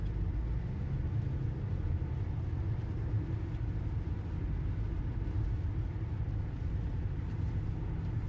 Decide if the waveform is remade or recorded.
recorded